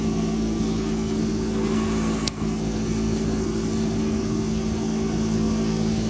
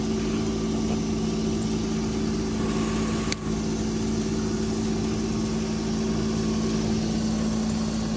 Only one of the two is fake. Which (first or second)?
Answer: first